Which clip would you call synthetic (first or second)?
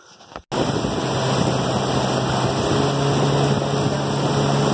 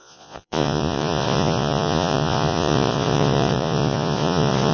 second